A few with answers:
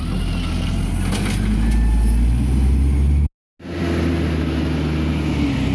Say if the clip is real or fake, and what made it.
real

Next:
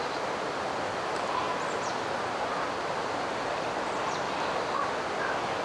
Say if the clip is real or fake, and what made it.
real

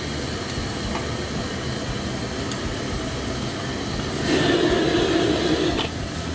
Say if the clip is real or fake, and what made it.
real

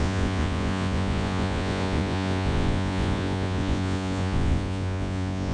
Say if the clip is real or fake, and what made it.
fake, vocoder, Vocos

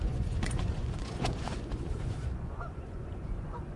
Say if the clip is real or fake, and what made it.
fake, vocoder, Vocos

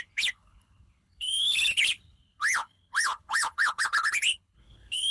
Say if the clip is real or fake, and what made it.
fake, codec, HILCodec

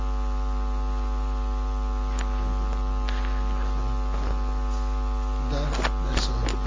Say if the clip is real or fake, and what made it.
real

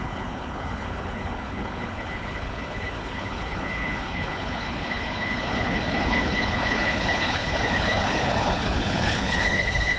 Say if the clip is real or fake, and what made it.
fake, codec, HILCodec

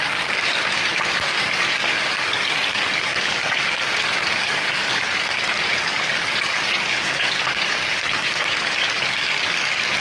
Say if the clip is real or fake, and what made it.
fake, codec, DAC